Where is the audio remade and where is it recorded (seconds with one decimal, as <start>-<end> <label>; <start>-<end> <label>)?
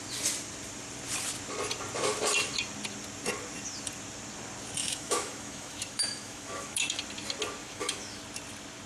0.0-4.8 recorded; 4.8-7.0 remade; 7.0-7.6 recorded; 7.6-8.2 remade; 8.2-8.9 recorded